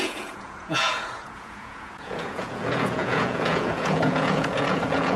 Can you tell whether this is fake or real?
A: fake